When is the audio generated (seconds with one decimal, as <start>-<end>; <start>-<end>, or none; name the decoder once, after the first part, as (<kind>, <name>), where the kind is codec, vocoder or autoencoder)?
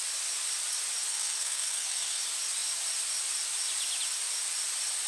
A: 1.1-2.2 (codec, SNAC)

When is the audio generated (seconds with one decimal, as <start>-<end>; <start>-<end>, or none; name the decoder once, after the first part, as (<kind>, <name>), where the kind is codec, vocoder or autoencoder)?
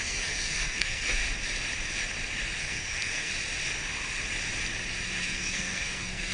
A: 0.0-1.2 (codec, SNAC); 2.6-3.3; 5.2-6.3